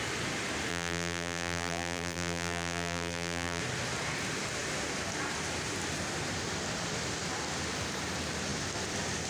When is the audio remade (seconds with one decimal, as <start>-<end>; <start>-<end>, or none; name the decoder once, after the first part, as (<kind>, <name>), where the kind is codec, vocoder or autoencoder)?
0.7-3.6 (vocoder, BigVGAN v2)